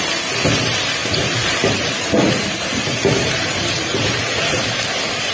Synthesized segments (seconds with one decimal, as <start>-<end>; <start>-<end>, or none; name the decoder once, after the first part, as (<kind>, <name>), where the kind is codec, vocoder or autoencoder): 1.0-4.2 (vocoder, BigVGAN v2)